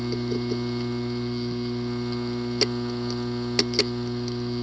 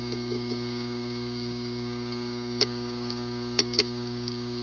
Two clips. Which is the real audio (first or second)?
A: first